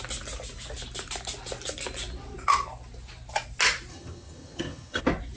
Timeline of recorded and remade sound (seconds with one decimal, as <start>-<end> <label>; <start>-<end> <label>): 0.0-3.9 recorded; 3.9-5.0 remade; 5.0-5.4 recorded